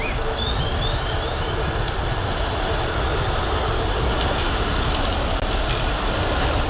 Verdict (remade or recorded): recorded